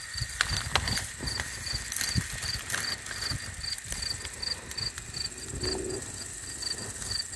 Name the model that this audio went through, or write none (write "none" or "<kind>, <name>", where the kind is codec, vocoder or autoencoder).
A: none